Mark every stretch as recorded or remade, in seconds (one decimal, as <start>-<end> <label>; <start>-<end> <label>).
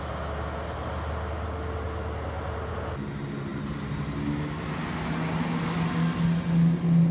0.0-7.1 recorded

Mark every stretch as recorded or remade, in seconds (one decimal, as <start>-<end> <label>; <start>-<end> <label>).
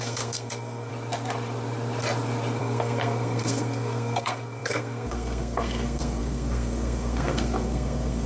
0.0-0.9 remade; 0.9-2.6 recorded; 2.6-8.3 remade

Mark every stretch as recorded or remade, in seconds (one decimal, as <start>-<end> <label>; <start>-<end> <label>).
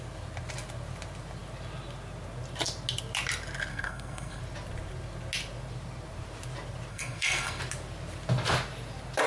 0.0-3.7 recorded; 3.7-4.4 remade; 4.4-6.9 recorded; 6.9-7.6 remade; 7.6-9.3 recorded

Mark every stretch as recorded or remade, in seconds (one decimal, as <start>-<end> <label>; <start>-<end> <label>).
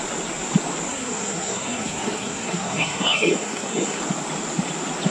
0.0-0.9 recorded; 0.9-4.0 remade; 4.0-5.1 recorded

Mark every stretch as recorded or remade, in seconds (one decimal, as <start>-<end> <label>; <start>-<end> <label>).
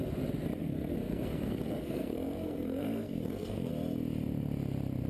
0.0-0.6 recorded; 0.6-3.7 remade; 3.7-5.1 recorded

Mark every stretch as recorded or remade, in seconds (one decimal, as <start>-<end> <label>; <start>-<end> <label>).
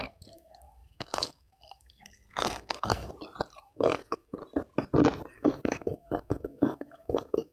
0.0-3.1 remade; 3.1-3.6 recorded; 3.6-4.4 remade; 4.4-5.3 recorded; 5.3-7.5 remade